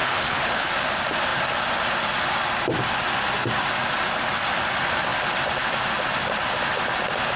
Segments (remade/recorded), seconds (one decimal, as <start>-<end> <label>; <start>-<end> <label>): 0.0-0.7 remade; 0.7-7.4 recorded